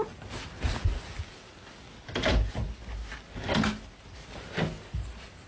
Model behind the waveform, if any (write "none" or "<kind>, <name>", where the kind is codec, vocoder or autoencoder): none